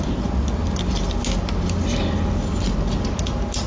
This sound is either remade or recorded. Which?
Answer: recorded